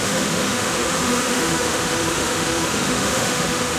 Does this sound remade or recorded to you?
remade